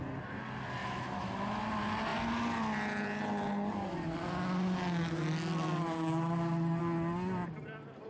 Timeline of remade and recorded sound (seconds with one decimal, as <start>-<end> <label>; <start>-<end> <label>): 0.0-0.8 recorded; 0.8-1.6 remade; 1.6-8.1 recorded